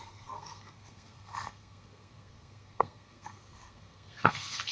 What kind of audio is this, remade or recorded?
remade